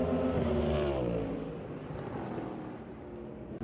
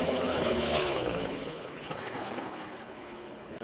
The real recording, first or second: first